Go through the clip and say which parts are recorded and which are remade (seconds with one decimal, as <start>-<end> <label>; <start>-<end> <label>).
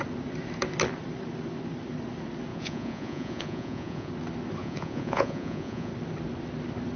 0.0-2.5 recorded; 2.5-4.1 remade; 4.1-4.6 recorded; 4.6-5.9 remade; 5.9-7.0 recorded